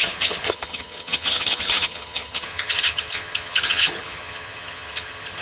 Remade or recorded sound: remade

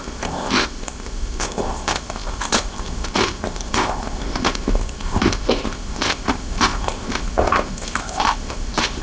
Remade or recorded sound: remade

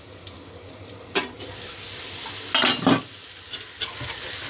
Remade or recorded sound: recorded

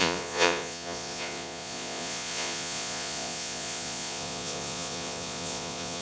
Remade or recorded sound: remade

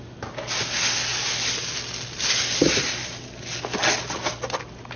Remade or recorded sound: recorded